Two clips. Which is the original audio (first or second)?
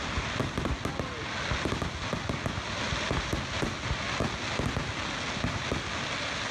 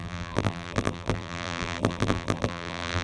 first